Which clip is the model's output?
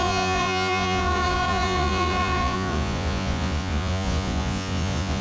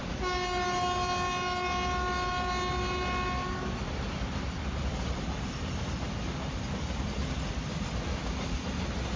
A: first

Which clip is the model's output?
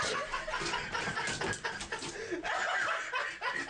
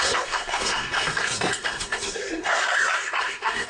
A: second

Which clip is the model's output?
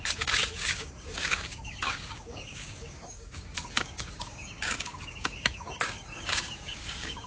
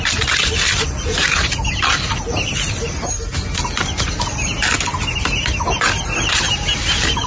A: first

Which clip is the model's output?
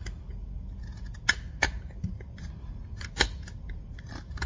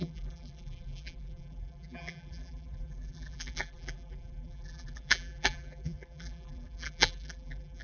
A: second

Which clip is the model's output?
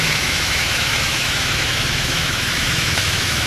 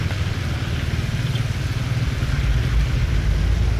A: first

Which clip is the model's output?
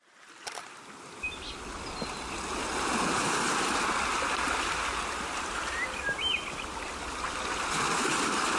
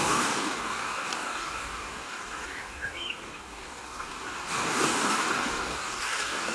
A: second